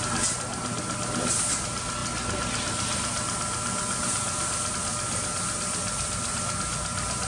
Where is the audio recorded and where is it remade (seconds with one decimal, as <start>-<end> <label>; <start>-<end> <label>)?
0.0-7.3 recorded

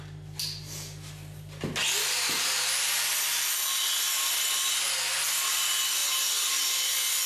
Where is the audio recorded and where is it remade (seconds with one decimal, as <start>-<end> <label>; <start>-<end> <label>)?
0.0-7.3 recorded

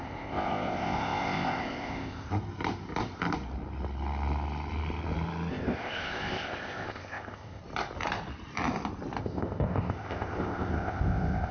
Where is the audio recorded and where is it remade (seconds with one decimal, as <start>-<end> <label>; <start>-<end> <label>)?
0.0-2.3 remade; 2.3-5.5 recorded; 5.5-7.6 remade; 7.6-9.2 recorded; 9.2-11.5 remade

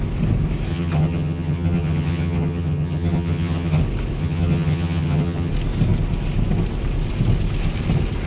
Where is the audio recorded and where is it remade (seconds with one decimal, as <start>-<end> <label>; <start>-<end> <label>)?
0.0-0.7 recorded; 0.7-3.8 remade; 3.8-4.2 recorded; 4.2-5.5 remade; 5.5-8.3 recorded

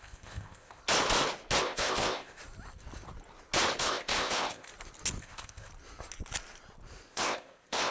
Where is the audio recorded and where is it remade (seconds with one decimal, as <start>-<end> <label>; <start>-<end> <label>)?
0.0-0.8 remade; 0.8-1.6 recorded; 1.6-2.4 remade; 2.4-3.8 recorded; 3.8-4.7 remade; 4.7-5.2 recorded; 5.2-5.7 remade; 5.7-7.1 recorded; 7.1-7.9 remade